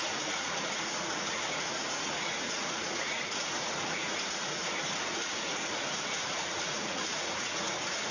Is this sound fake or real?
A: fake